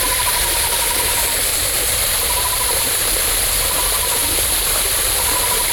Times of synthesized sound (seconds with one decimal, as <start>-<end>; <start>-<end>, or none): 1.5-3.0